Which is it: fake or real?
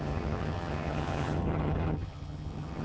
fake